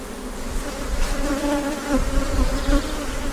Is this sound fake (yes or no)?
yes